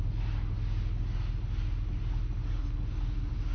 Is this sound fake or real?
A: real